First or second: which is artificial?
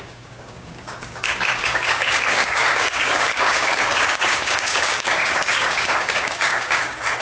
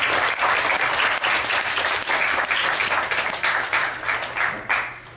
first